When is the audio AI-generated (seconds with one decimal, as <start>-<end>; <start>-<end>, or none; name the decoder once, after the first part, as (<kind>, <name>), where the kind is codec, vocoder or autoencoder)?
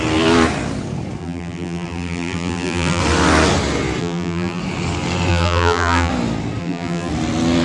1.2-3.0 (vocoder, BigVGAN v2); 4.0-4.6; 5.3-6.1; 6.6-7.1